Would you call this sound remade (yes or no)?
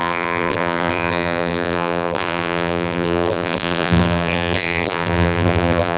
yes